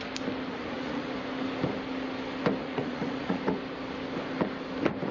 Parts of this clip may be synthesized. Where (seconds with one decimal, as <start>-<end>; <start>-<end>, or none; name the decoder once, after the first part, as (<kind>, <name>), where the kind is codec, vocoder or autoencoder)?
0.5-1.1 (vocoder, Vocos); 2.6-3.4